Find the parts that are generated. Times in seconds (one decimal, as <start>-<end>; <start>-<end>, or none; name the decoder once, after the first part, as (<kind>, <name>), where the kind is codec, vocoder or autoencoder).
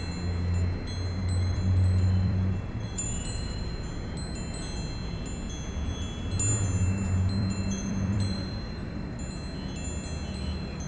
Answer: 1.2-3.7 (vocoder, BigVGAN v2); 7.4-9.0